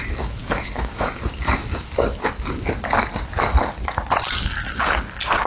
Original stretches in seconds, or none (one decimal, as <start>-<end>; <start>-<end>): 0.0-0.4; 1.2-5.5